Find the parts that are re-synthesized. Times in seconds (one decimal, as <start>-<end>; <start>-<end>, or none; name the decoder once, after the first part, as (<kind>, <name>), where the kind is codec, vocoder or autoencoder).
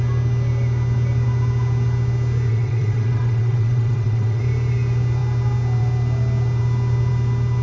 2.5-4.4 (vocoder, WaveNeXt)